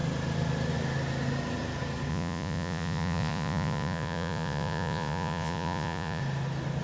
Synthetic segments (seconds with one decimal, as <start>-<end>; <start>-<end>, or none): 2.1-6.2